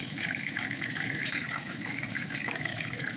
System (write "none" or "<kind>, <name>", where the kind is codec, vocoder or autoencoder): autoencoder, DAC-VAE